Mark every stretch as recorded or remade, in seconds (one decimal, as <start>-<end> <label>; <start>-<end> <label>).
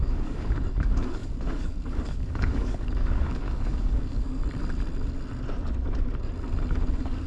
0.0-4.4 remade; 4.4-6.7 recorded; 6.7-7.3 remade